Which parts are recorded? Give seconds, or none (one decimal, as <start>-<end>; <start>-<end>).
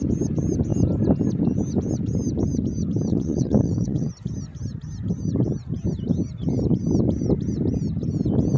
0.0-3.1; 4.1-8.6